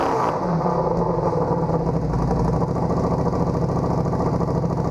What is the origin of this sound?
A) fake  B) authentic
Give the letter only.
B